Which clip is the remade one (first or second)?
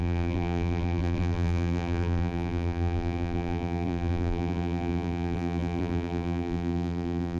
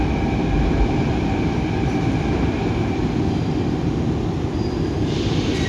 first